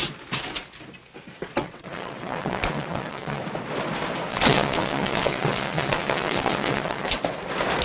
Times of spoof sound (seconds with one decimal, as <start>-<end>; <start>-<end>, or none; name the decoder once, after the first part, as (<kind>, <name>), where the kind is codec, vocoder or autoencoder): 1.6-3.4 (vocoder, WaveNeXt); 4.3-7.2